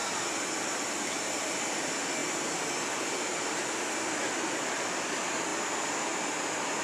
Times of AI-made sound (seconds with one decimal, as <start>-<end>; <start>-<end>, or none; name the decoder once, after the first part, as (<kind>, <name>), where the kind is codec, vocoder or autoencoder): 0.0-2.2 (vocoder, BigVGAN v2); 5.0-5.5